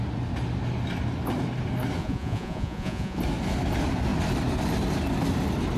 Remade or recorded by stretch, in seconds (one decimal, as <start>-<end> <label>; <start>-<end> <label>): 0.0-2.0 recorded; 2.0-3.2 remade; 3.2-5.8 recorded